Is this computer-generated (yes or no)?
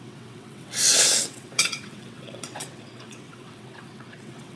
yes